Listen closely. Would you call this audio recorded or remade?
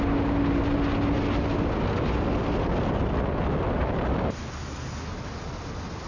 recorded